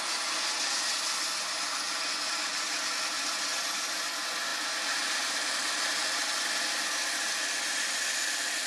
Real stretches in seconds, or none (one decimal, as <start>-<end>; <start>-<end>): 0.0-4.5